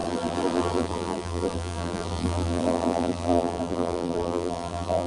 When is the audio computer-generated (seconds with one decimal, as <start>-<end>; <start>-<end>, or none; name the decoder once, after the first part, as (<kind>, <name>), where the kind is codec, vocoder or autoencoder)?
0.0-5.1 (vocoder, BigVGAN v2)

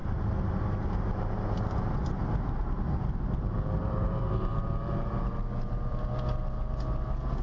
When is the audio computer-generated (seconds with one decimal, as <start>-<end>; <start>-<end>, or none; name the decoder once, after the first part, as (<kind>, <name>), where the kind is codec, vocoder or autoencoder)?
3.8-6.2 (vocoder, BigVGAN v2)